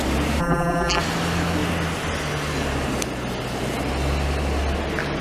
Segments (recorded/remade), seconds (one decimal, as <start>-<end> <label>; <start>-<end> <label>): 0.0-0.4 recorded; 0.4-1.0 remade; 1.0-5.2 recorded